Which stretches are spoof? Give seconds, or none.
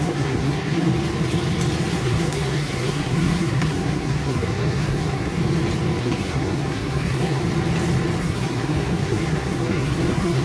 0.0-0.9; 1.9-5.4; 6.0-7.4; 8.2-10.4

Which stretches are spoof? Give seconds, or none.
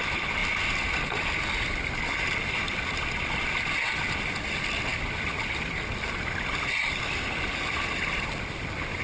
none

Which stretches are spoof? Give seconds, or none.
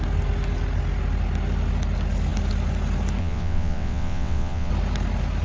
3.2-4.7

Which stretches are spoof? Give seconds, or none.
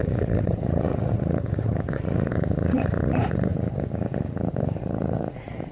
0.0-3.5; 4.8-5.7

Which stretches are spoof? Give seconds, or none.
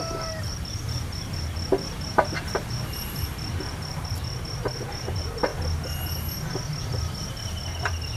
0.0-5.5; 6.8-8.2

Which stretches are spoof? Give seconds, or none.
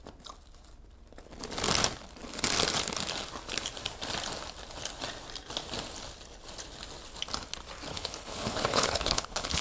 7.9-9.6